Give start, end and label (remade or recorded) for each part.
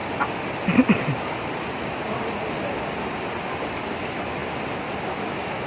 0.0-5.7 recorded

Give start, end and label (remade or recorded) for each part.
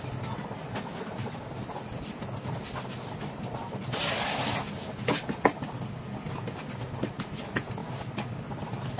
0.0-9.0 recorded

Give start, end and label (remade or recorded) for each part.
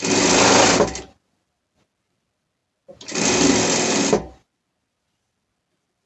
0.0-6.1 recorded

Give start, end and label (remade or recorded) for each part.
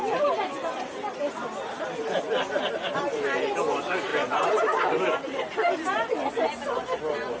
0.0-7.4 recorded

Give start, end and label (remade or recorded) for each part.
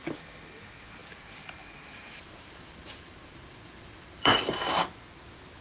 0.0-1.0 recorded; 1.0-4.4 remade; 4.4-5.6 recorded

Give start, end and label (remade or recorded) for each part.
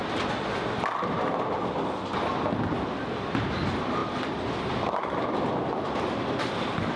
0.0-7.0 recorded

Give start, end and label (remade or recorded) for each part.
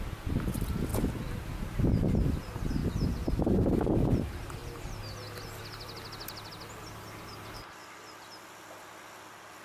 0.0-9.6 recorded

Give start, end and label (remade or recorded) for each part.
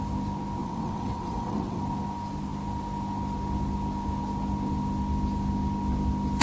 0.0-0.6 recorded; 0.6-1.8 remade; 1.8-6.4 recorded